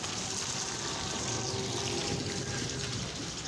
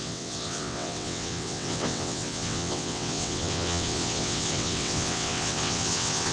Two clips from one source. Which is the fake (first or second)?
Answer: second